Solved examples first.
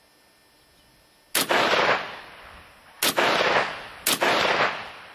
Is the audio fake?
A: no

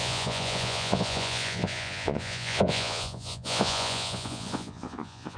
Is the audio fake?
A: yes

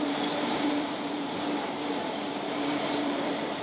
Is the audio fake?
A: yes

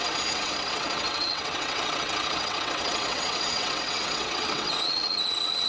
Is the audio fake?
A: yes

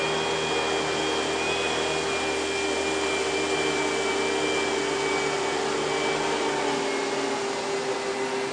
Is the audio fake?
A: no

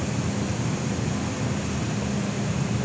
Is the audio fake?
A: no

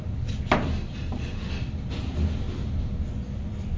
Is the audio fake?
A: no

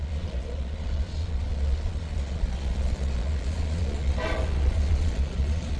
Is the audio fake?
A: yes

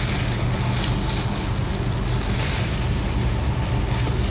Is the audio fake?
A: no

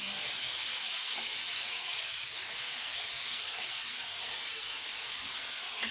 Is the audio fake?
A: yes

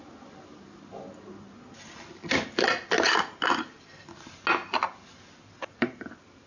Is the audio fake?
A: no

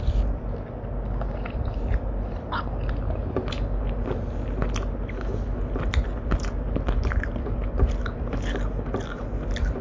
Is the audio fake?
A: no